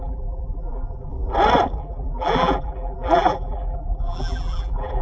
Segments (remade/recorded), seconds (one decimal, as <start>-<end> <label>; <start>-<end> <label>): 0.0-1.1 remade; 1.1-1.8 recorded; 1.8-5.0 remade